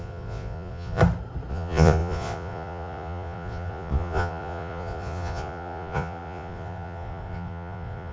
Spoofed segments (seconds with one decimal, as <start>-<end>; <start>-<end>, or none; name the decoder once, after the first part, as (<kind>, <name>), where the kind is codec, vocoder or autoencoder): 0.0-1.0 (vocoder, Vocos); 1.5-8.1

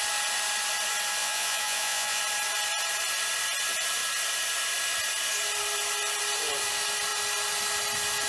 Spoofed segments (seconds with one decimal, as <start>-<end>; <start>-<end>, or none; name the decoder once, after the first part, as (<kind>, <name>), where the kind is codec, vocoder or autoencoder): 1.2-2.2 (vocoder, Vocos)

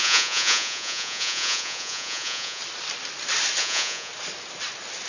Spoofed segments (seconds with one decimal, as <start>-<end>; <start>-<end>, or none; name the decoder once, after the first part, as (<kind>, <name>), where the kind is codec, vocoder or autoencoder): 0.0-2.6 (vocoder, Vocos); 3.6-4.1

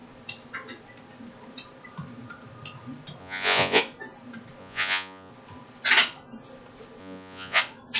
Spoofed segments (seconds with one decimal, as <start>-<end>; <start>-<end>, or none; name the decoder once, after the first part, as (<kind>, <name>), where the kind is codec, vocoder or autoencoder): 3.2-3.8 (vocoder, Vocos); 4.6-5.3; 7.0-7.6

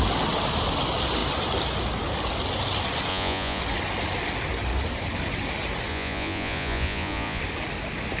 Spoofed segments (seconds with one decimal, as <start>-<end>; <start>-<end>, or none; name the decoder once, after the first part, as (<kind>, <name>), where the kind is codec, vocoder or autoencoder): 3.1-3.6 (vocoder, Vocos); 5.9-7.4